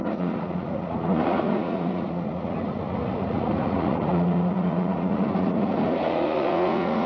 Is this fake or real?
fake